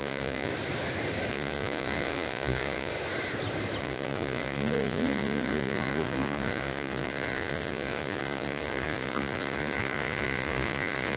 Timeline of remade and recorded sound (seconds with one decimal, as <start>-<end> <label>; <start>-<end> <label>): 0.0-0.5 remade; 0.5-1.3 recorded; 1.3-2.9 remade; 2.9-3.8 recorded; 3.8-11.2 remade

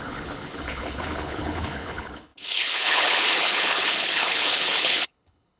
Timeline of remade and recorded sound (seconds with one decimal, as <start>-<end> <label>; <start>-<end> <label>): 0.0-5.6 remade

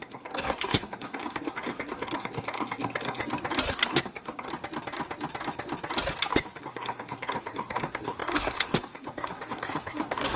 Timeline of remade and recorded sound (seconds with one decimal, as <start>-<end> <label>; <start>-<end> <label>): 0.0-3.2 remade; 3.2-3.7 recorded; 3.7-4.5 remade; 4.5-6.6 recorded; 6.6-10.4 remade

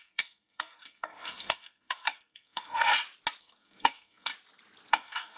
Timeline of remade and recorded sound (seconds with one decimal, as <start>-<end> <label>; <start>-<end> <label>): 0.0-2.9 remade; 2.9-3.4 recorded; 3.4-4.3 remade; 4.3-4.9 recorded; 4.9-5.4 remade

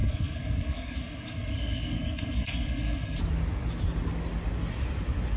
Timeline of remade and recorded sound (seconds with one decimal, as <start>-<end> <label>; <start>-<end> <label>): 0.0-3.2 remade; 3.2-5.4 recorded

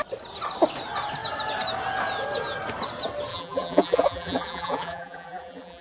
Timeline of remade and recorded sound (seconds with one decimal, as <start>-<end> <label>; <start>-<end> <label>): 0.0-3.3 recorded; 3.3-5.8 remade